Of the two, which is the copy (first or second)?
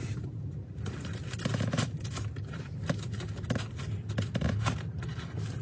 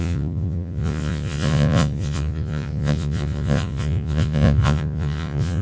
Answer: second